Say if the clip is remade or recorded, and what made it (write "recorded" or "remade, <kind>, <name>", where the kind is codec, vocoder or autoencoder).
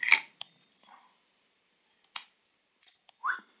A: recorded